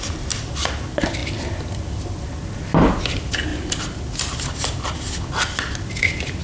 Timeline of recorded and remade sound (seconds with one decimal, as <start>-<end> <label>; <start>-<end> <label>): 0.0-6.4 recorded